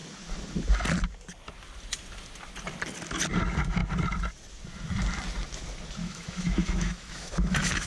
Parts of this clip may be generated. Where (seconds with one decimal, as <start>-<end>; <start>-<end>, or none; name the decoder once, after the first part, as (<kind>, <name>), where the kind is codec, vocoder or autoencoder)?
6.0-7.9 (autoencoder, DAC-VAE)